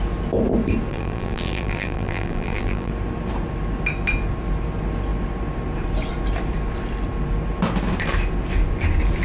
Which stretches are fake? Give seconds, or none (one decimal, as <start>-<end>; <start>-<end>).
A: 0.9-2.9